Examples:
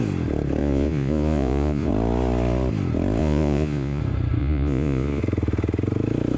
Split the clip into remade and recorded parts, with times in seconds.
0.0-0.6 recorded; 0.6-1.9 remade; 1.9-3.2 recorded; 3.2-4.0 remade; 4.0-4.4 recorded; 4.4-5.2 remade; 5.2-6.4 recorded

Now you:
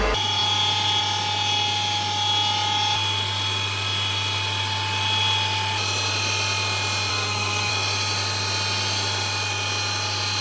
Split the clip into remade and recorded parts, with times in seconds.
0.0-7.1 recorded; 7.1-7.7 remade; 7.7-10.4 recorded